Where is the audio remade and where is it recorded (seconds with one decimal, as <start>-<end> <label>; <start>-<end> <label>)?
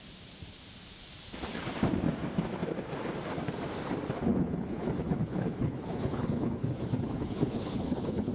0.0-4.3 recorded; 4.3-8.3 remade